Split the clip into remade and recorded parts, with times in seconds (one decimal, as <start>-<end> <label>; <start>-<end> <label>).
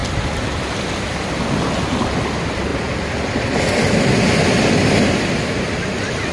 0.0-6.3 recorded